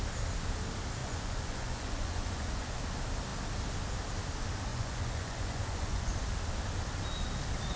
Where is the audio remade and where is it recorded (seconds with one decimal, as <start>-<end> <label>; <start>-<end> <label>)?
0.0-1.0 recorded; 1.0-2.8 remade; 2.8-4.7 recorded; 4.7-6.1 remade; 6.1-7.8 recorded